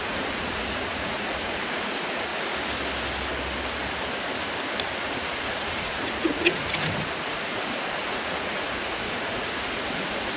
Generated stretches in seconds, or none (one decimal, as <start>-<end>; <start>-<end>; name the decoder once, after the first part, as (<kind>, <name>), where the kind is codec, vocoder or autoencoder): 0.0-2.3 (vocoder, Vocos); 5.0-10.4